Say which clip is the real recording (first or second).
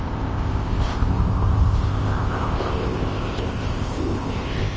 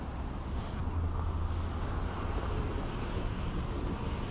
second